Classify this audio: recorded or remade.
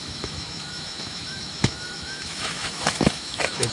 remade